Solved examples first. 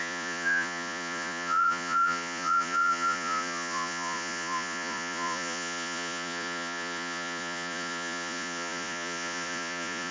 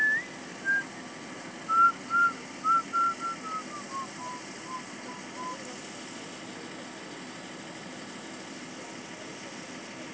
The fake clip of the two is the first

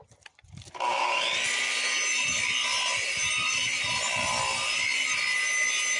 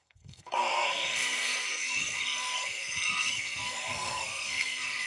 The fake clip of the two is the second